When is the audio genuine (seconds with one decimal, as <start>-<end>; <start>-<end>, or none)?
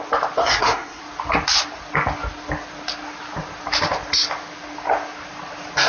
0.0-0.4; 1.0-5.9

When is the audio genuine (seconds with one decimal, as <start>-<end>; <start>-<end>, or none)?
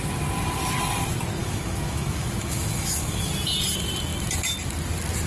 0.0-1.4; 3.3-5.3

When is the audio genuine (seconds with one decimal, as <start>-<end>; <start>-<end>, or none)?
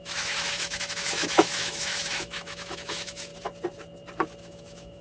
3.3-4.4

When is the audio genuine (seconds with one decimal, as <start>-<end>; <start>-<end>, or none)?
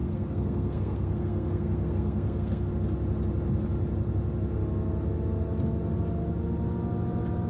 2.7-7.5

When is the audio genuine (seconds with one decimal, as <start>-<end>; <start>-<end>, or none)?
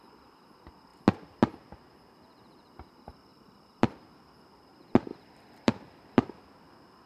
0.0-3.3; 4.0-5.1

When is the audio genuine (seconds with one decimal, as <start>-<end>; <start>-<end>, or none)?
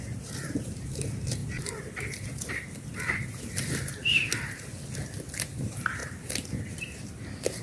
4.2-5.6